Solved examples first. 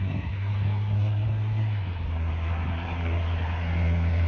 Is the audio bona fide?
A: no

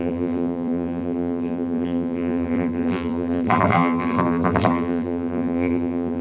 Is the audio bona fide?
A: no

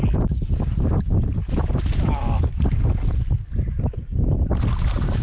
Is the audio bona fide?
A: yes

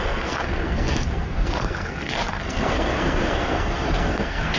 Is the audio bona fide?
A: no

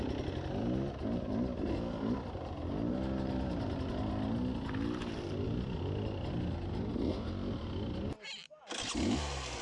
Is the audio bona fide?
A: yes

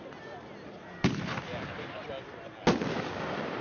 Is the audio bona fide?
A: yes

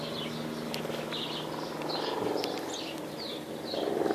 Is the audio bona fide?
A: yes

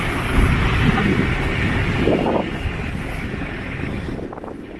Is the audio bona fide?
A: no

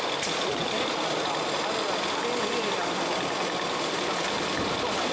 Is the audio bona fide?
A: yes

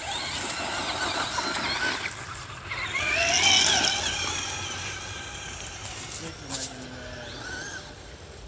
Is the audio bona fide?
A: yes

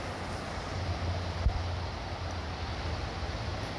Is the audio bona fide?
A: yes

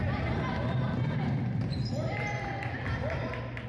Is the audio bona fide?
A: yes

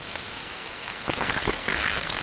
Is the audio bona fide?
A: no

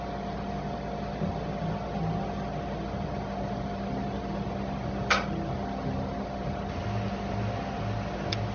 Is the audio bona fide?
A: yes